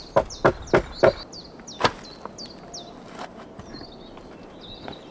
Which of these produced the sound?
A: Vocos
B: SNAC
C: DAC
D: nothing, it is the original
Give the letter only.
D